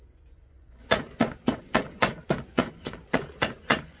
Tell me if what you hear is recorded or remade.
remade